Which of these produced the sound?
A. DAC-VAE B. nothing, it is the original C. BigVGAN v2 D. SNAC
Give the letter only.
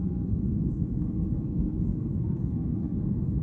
D